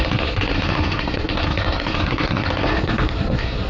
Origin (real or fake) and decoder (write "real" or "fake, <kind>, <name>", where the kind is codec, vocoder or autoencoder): fake, codec, SNAC